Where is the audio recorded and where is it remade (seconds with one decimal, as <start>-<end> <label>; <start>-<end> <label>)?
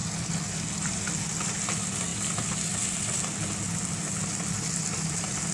0.0-5.5 recorded